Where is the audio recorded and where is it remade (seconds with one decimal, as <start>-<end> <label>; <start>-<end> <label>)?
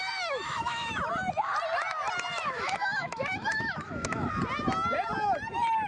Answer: 0.0-1.1 remade; 1.1-2.3 recorded; 2.3-4.3 remade; 4.3-5.9 recorded